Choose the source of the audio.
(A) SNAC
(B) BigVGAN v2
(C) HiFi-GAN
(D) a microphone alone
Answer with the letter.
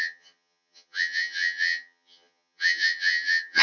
C